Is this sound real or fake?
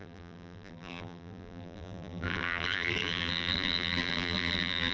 fake